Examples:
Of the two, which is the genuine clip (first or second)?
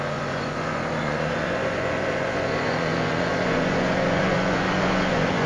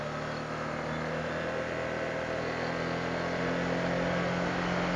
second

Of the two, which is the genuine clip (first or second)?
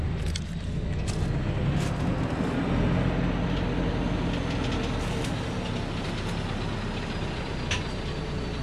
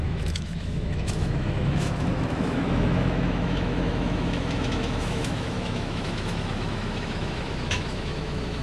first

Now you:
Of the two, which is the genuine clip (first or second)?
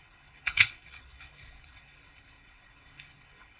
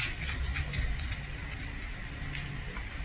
second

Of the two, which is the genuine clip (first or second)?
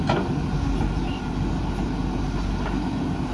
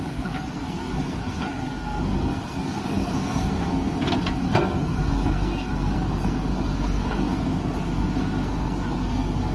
first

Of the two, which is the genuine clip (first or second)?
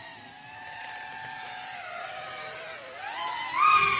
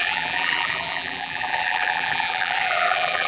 first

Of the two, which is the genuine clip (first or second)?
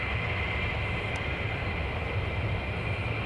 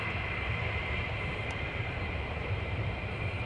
first